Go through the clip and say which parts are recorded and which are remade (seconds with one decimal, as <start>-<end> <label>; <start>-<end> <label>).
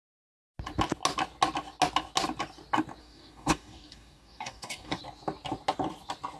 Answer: 0.0-3.0 recorded; 3.0-5.0 remade; 5.0-6.4 recorded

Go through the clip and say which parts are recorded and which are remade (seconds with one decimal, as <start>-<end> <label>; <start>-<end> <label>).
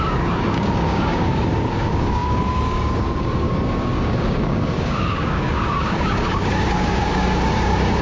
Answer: 0.0-8.0 remade